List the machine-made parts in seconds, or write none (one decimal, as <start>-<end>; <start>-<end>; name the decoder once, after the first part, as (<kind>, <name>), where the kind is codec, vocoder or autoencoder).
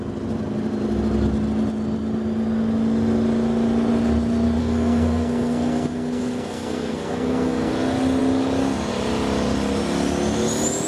4.6-7.7 (codec, SNAC)